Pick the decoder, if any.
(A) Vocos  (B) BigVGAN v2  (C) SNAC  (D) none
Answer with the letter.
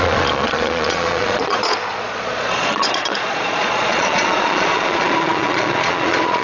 A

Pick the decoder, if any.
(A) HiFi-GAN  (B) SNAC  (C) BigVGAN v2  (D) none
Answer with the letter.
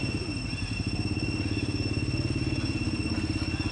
D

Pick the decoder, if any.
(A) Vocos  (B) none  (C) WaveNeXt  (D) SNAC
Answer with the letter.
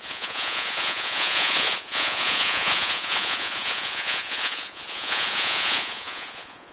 A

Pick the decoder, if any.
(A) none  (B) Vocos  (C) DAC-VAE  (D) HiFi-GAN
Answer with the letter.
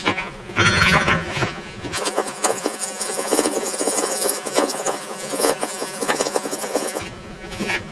B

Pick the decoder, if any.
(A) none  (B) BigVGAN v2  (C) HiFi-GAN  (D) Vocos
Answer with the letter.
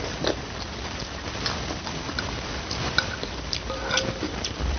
B